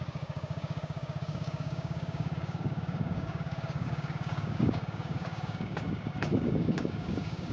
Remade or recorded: remade